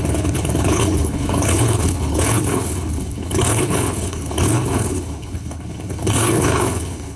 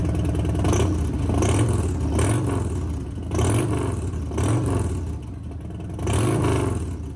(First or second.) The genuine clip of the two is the second